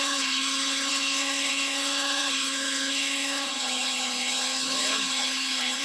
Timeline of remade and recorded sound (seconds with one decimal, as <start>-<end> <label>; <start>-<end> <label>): 0.0-5.8 remade